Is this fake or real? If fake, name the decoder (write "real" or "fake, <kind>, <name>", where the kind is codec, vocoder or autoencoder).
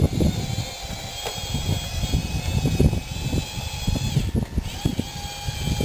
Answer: real